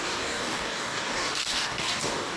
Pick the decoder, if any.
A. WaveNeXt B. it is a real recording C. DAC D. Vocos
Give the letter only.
C